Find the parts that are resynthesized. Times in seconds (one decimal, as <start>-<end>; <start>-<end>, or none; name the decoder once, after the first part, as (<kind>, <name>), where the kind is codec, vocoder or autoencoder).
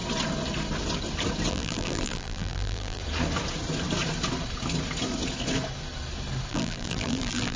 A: 1.5-3.0 (vocoder, BigVGAN v2); 6.5-7.6